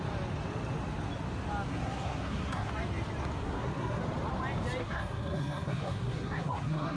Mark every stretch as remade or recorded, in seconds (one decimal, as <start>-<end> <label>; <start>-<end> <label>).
0.0-1.7 recorded; 1.7-2.7 remade; 2.7-3.4 recorded; 3.4-4.0 remade; 4.0-4.8 recorded; 4.8-7.0 remade